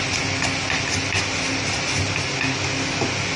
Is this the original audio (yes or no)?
yes